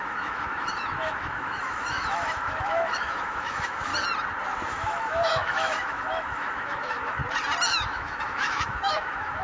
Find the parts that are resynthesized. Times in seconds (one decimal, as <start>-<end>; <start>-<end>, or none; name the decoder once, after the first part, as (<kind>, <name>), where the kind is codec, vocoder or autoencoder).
0.0-3.9 (autoencoder, DAC-VAE); 4.7-7.2; 7.7-9.4